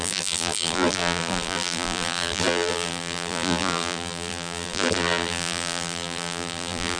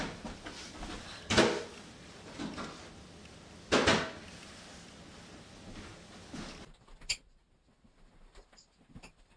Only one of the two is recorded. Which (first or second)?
second